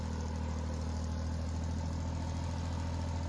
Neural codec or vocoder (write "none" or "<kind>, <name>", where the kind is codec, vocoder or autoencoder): none